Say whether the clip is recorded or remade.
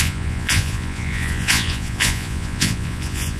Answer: remade